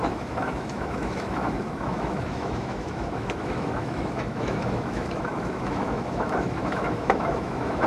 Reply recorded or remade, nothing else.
remade